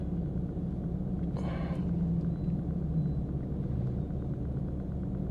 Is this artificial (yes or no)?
no